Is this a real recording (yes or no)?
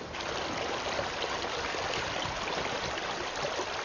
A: yes